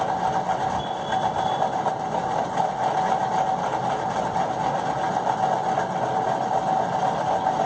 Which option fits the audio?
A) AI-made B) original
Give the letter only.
B